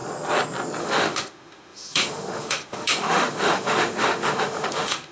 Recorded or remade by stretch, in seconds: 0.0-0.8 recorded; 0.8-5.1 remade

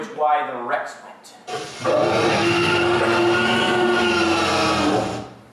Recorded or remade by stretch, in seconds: 0.0-2.3 recorded; 2.3-3.0 remade; 3.0-5.5 recorded